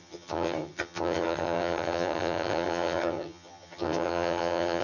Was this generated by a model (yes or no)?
yes